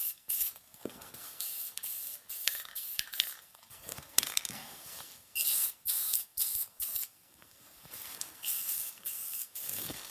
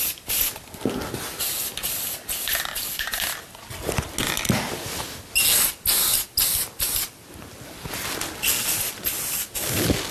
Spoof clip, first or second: first